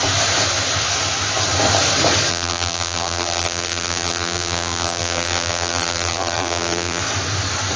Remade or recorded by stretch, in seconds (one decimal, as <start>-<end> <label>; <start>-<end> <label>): 0.0-2.3 recorded; 2.3-7.0 remade; 7.0-7.8 recorded